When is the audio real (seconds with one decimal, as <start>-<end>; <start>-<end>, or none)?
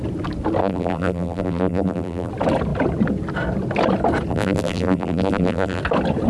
0.0-0.6; 2.3-4.3; 5.8-6.3